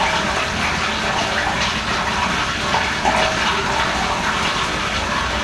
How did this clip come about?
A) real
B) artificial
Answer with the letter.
A